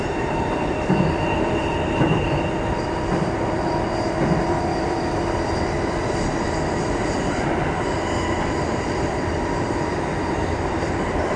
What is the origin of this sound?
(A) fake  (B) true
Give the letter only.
A